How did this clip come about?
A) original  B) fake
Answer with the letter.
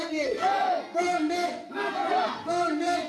B